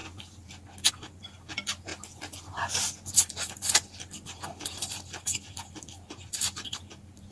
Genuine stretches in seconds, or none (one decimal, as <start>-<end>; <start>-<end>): 0.0-0.9; 1.9-3.2